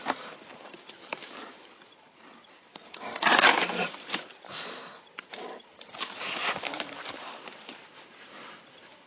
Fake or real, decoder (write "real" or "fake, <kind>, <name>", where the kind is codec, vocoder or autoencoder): fake, vocoder, BigVGAN v2